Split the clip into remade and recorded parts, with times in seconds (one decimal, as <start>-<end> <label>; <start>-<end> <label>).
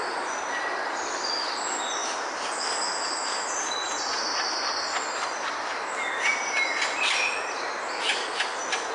0.0-8.9 recorded